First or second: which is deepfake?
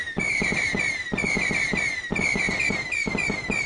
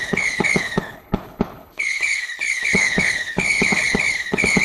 second